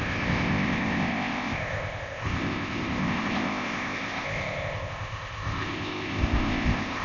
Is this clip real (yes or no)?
no